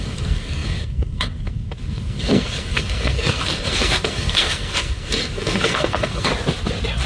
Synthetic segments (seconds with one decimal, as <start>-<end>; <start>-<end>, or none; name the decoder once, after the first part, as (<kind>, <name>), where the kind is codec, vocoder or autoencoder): 0.0-6.3 (codec, SNAC)